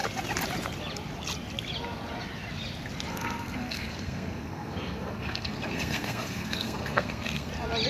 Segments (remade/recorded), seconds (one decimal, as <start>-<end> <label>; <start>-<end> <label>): 0.0-3.1 recorded; 3.1-7.5 remade; 7.5-7.9 recorded